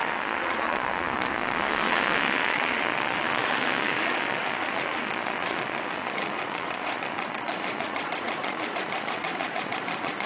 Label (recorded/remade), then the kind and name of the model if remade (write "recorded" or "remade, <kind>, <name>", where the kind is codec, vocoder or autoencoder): remade, vocoder, Vocos